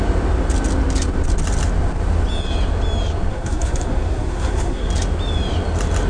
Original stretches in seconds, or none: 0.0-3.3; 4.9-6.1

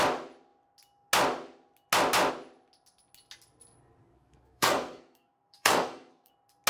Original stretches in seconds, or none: 0.0-4.0; 6.3-6.7

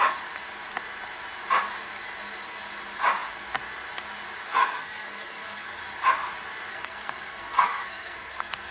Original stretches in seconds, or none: 0.0-4.5; 5.8-6.7

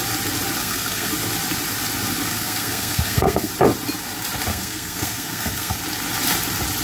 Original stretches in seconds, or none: 0.0-0.6; 1.1-2.3; 3.5-4.5; 5.8-6.8

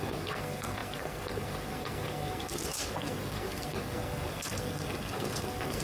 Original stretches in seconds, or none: none

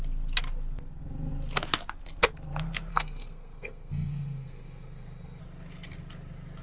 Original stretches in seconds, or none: 0.0-2.9; 5.4-6.6

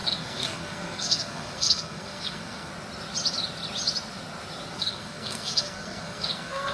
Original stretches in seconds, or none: 2.7-4.7

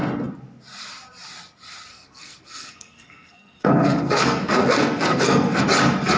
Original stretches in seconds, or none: 0.0-1.9; 5.6-6.2